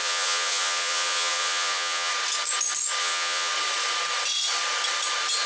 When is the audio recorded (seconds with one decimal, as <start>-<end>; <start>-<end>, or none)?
2.1-3.0; 3.5-5.5